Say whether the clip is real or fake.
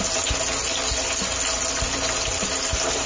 real